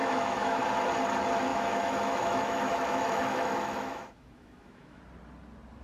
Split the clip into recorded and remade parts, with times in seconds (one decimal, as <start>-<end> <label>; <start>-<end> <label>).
0.0-0.6 remade; 0.6-1.5 recorded; 1.5-5.0 remade; 5.0-5.8 recorded